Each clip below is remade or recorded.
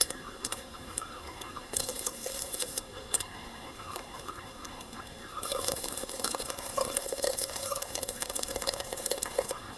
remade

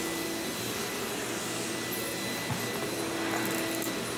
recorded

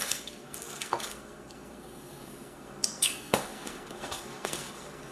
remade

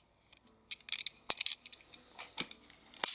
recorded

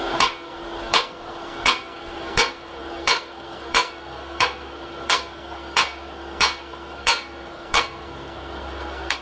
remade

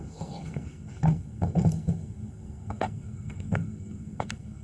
remade